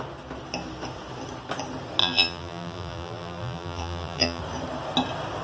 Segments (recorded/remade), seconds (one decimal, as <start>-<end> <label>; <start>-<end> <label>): 0.0-2.0 recorded; 2.0-4.4 remade; 4.4-5.4 recorded